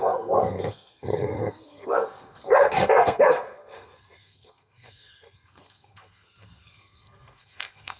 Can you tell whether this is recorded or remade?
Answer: remade